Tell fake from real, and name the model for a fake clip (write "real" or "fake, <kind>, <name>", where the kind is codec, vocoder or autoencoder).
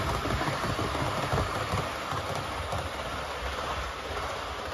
real